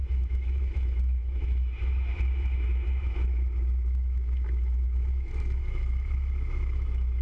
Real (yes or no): no